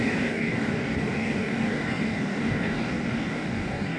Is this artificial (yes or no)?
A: yes